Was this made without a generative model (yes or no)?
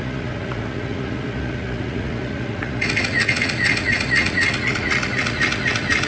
no